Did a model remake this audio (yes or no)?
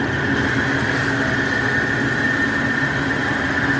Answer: no